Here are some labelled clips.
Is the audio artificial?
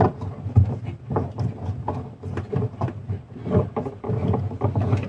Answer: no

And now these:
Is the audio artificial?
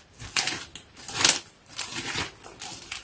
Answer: no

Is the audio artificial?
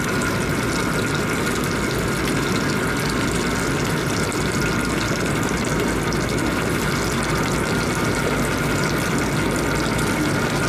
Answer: no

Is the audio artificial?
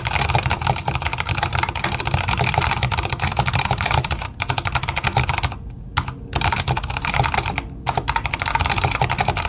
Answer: no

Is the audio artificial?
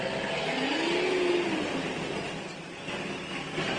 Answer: no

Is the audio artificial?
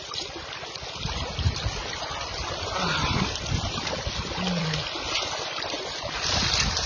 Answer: yes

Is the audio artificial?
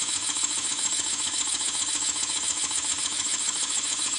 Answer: yes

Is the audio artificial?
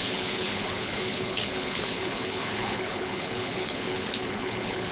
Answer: yes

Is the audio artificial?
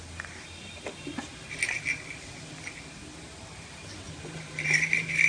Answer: no